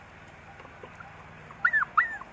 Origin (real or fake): real